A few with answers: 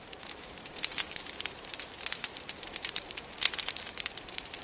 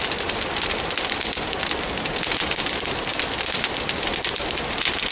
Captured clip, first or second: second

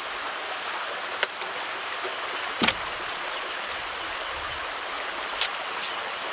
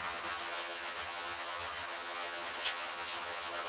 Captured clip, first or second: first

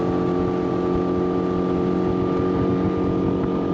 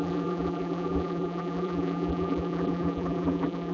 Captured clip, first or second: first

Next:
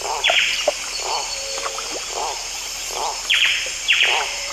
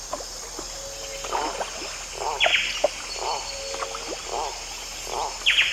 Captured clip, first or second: second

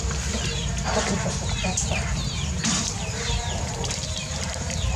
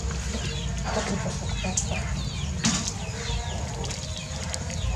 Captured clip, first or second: second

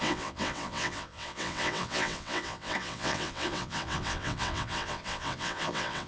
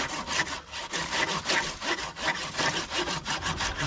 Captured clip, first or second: second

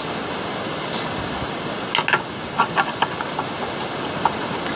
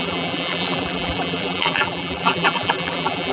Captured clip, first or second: first